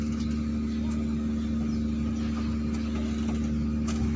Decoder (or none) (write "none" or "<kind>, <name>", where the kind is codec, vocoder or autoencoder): none